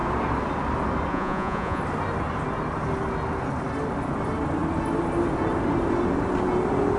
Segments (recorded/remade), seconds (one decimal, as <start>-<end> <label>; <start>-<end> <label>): 0.0-1.1 recorded; 1.1-1.8 remade; 1.8-7.0 recorded